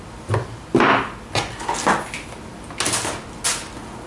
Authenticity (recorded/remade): recorded